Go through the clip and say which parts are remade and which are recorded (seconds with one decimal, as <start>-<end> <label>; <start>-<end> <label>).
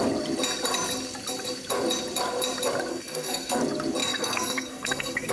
0.0-2.9 recorded; 2.9-3.6 remade; 3.6-4.0 recorded; 4.0-5.3 remade